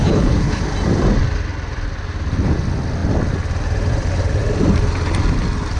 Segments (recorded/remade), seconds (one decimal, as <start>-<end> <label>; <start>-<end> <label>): 0.0-0.6 remade; 0.6-5.8 recorded